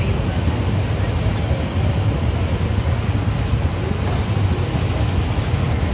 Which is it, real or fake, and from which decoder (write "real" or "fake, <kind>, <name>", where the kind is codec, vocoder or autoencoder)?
real